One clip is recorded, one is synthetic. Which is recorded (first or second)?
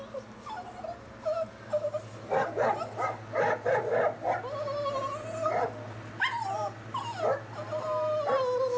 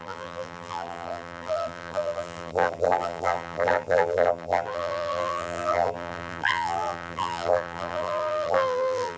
first